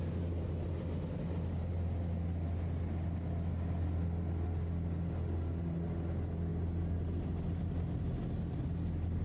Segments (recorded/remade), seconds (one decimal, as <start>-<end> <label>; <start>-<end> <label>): 0.0-9.2 recorded